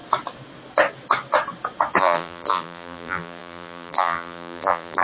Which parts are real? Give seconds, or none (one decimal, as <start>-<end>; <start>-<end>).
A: 0.0-2.0